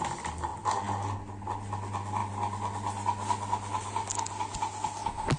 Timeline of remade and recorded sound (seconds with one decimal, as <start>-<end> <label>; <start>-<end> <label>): 0.0-5.4 recorded